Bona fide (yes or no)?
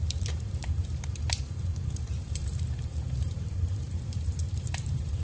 no